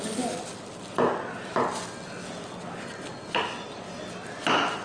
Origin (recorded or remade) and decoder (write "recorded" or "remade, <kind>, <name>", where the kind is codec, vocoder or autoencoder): recorded